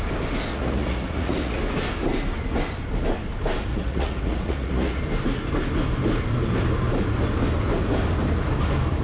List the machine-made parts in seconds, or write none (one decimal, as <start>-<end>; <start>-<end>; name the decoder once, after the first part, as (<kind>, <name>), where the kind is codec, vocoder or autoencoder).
0.5-1.6 (vocoder, Vocos); 3.7-5.0